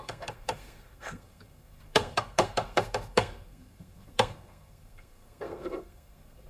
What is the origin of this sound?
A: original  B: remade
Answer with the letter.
B